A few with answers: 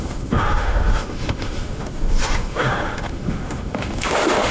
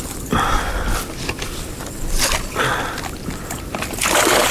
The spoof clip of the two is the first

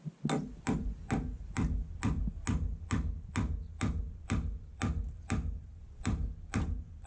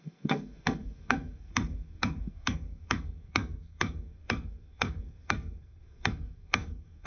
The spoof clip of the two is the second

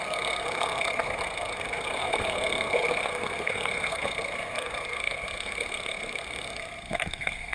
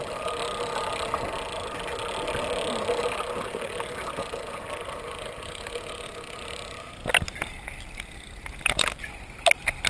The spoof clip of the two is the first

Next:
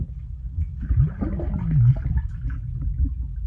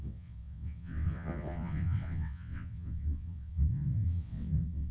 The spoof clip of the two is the second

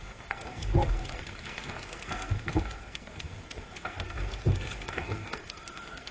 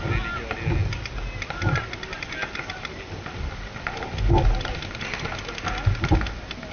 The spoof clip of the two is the first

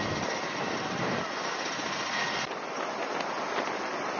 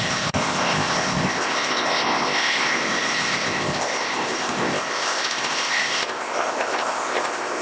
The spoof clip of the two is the second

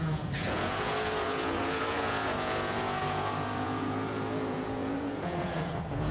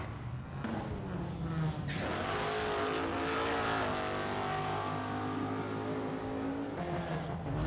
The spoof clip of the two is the first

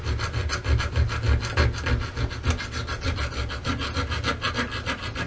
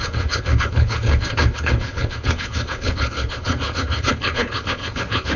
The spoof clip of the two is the second